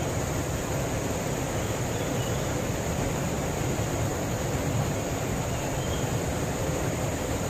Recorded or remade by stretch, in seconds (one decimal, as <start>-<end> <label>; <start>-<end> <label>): 0.0-4.1 remade; 4.1-5.9 recorded; 5.9-7.5 remade

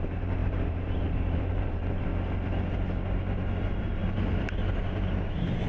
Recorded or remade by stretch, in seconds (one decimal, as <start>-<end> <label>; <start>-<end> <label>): 0.0-2.1 remade; 2.1-3.8 recorded; 3.8-5.7 remade

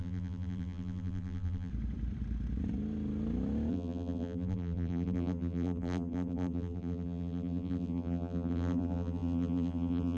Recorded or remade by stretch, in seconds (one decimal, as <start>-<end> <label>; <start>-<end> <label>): 0.0-1.7 remade; 1.7-3.7 recorded; 3.7-10.2 remade

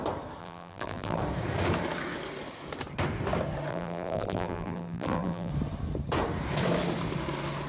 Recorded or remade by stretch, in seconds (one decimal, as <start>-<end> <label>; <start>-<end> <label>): 0.0-0.4 recorded; 0.4-1.2 remade; 1.2-3.7 recorded; 3.7-5.5 remade; 5.5-7.7 recorded

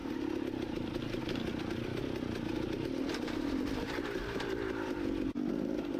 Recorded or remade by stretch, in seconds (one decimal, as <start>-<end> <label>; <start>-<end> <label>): 0.0-1.9 recorded; 1.9-5.5 remade; 5.5-6.0 recorded

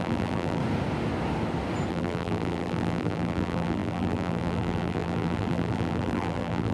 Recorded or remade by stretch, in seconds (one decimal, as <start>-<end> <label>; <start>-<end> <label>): 0.0-0.6 remade; 0.6-1.9 recorded; 1.9-6.7 remade